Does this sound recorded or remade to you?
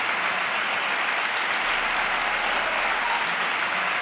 recorded